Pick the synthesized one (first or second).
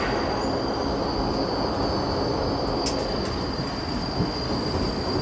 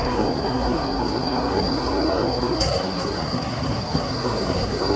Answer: second